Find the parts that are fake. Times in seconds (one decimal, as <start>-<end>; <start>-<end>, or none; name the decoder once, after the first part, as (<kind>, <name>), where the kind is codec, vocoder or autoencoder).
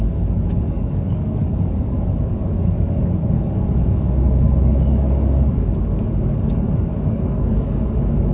0.0-8.3 (codec, DAC)